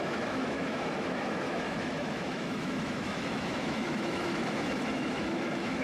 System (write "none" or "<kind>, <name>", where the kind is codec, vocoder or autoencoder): autoencoder, DAC-VAE